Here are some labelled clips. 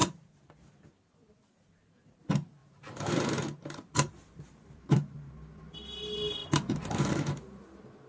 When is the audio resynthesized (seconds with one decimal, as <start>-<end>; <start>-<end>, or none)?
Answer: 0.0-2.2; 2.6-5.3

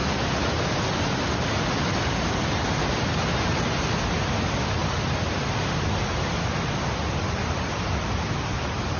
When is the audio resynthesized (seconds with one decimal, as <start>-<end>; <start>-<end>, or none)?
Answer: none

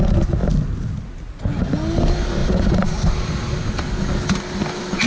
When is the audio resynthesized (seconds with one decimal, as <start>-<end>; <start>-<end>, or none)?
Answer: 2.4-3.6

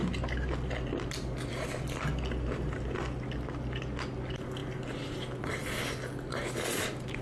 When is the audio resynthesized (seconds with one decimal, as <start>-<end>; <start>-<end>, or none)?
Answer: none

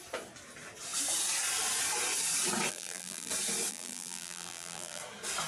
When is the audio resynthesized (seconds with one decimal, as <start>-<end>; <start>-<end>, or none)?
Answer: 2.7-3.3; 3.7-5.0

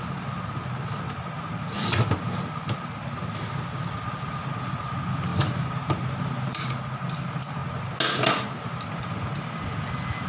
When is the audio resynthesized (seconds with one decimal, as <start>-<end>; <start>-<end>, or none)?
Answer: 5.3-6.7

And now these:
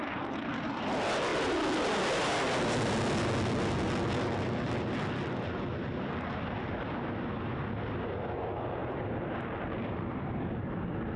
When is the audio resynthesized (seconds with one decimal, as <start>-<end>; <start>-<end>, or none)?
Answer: 8.8-10.2